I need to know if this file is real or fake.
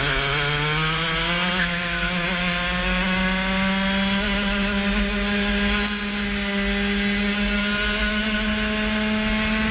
real